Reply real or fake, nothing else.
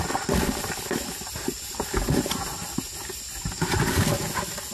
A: real